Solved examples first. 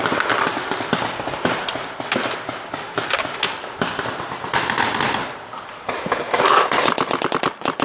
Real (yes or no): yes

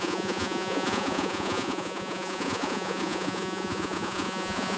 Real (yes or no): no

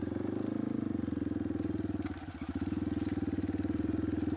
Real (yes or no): yes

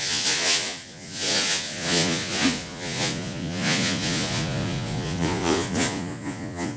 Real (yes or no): no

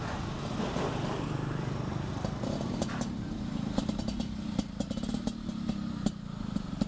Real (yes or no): no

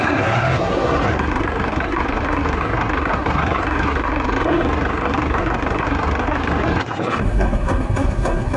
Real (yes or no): no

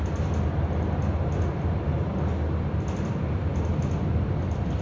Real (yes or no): yes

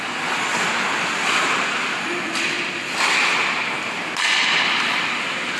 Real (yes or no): yes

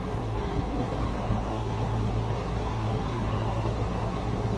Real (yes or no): no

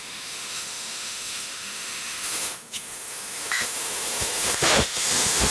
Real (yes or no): no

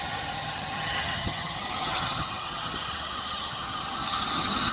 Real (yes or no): no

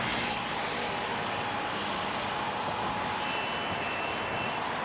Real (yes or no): yes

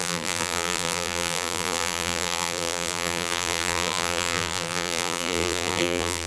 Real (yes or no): no